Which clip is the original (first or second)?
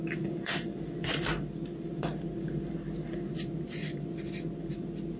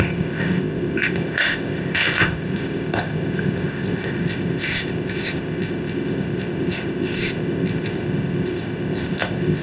first